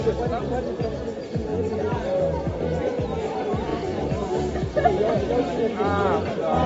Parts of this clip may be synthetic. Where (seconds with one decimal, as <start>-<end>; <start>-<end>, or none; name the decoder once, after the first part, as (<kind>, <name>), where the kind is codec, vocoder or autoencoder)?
3.7-4.3 (vocoder, BigVGAN v2)